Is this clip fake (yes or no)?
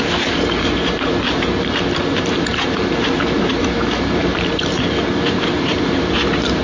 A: yes